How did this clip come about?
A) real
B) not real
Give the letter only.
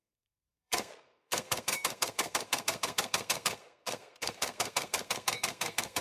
B